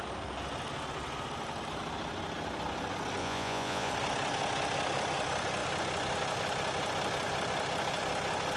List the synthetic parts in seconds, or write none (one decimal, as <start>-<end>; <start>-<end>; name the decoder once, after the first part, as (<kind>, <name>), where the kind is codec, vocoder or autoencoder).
3.2-3.9 (vocoder, Vocos)